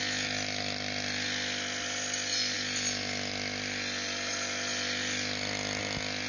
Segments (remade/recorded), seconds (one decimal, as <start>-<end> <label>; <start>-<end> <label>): 0.0-6.3 recorded